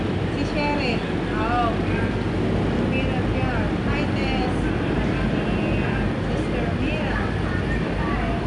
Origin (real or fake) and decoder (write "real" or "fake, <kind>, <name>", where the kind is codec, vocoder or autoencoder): real